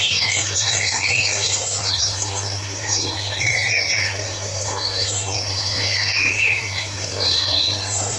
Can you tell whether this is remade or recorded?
remade